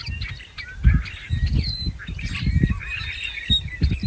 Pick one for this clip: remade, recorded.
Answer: recorded